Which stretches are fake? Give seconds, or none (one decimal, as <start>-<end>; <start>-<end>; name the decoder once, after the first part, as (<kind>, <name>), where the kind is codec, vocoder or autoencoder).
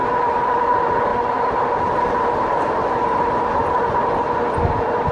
none